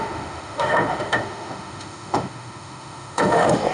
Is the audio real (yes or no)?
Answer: no